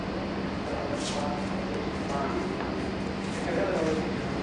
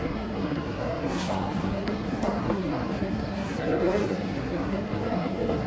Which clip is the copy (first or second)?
second